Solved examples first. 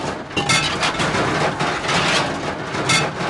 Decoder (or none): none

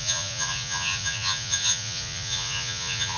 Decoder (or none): vocoder, Vocos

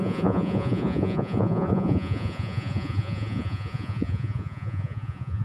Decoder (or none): vocoder, Vocos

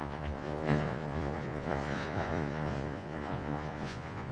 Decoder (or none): vocoder, Vocos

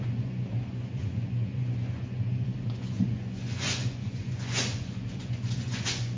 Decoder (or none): vocoder, Vocos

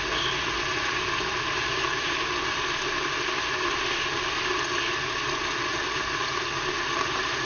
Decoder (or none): none